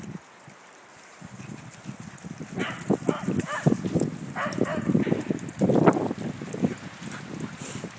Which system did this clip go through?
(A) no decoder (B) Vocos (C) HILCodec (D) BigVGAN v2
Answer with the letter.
A